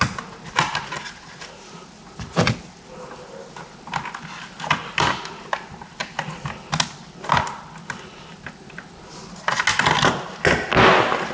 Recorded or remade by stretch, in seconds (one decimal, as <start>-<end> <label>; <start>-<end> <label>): 0.0-11.3 recorded